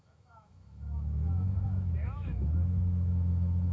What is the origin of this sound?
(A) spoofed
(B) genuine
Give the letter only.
A